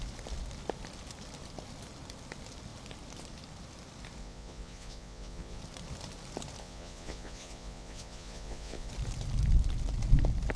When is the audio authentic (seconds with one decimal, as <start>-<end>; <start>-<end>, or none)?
0.0-4.2; 5.6-6.6; 8.9-10.6